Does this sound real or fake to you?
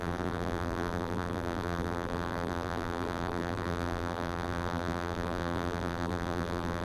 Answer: fake